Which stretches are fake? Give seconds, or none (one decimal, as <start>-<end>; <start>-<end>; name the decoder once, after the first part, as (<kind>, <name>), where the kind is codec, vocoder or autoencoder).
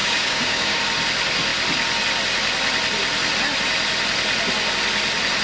0.0-0.8 (codec, DAC)